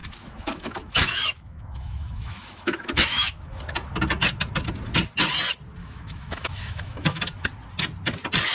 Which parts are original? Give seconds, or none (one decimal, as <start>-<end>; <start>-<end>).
3.6-5.8; 7.2-8.5